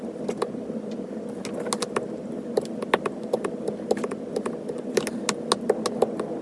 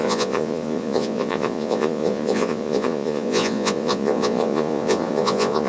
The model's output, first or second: second